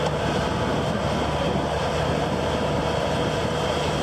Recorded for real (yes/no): no